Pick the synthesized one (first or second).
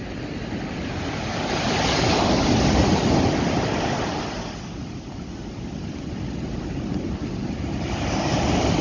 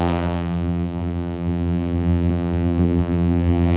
second